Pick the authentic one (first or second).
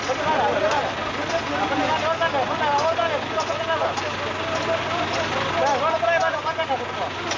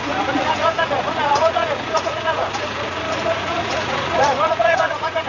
first